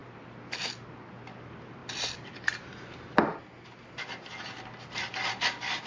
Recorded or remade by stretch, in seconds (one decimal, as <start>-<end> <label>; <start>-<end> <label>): 0.0-5.9 recorded

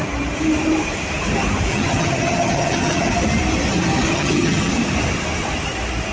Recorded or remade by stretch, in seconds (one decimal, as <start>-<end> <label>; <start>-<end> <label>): 0.0-1.7 recorded; 1.7-3.1 remade; 3.1-4.1 recorded; 4.1-4.7 remade; 4.7-6.1 recorded

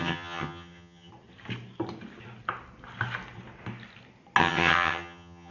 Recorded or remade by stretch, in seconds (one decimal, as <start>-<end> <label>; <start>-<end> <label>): 0.0-1.1 remade; 1.1-4.4 recorded; 4.4-5.5 remade

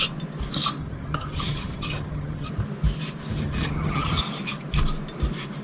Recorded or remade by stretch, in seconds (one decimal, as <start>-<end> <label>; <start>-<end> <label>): 0.0-0.8 recorded; 0.8-2.5 remade; 2.5-3.3 recorded; 3.3-4.2 remade; 4.2-5.6 recorded

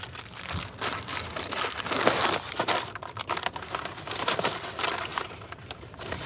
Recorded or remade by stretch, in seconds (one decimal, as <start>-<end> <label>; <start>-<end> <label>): 0.0-6.3 recorded

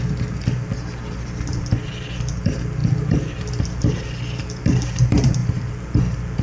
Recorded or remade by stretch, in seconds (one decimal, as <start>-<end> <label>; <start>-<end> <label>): 0.0-6.4 recorded